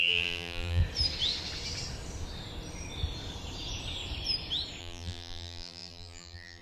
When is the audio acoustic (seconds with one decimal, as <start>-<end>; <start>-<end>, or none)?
0.8-4.8